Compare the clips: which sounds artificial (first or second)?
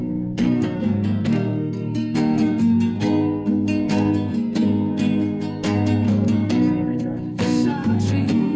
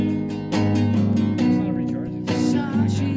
first